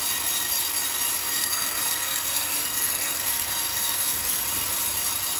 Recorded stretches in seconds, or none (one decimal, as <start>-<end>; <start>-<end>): 0.0-1.2; 4.4-5.4